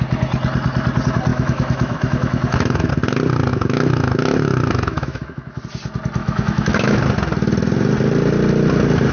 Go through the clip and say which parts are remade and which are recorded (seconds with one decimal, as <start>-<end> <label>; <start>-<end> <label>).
0.0-1.3 recorded; 1.3-2.9 remade; 2.9-3.5 recorded; 3.5-5.6 remade; 5.6-6.2 recorded; 6.2-7.0 remade; 7.0-9.1 recorded